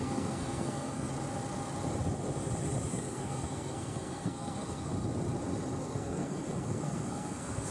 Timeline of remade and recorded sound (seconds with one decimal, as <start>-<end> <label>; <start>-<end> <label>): 0.0-1.1 remade; 1.1-2.9 recorded; 2.9-4.9 remade; 4.9-5.8 recorded; 5.8-7.7 remade

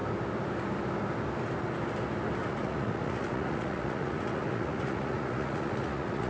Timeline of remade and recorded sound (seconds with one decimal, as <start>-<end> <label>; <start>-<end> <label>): 0.0-2.4 recorded; 2.4-6.3 remade

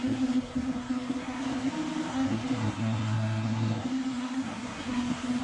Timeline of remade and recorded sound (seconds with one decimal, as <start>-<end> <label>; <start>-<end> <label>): 0.0-1.7 remade; 1.7-2.1 recorded; 2.1-5.4 remade